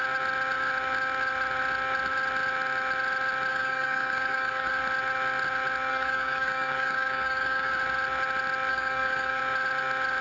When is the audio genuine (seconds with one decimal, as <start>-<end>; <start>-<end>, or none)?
0.0-3.5; 4.7-5.9; 7.7-8.7; 9.4-10.2